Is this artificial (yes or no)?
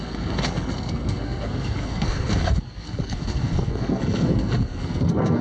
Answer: yes